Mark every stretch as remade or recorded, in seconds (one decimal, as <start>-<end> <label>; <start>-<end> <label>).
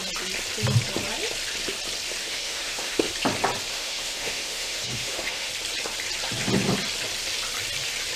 0.0-2.2 recorded; 2.2-3.1 remade; 3.1-3.7 recorded; 3.7-5.5 remade; 5.5-8.2 recorded